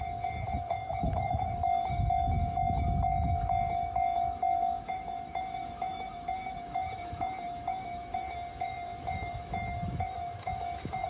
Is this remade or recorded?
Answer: remade